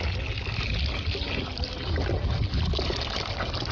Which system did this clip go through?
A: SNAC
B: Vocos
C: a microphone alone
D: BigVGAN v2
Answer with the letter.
C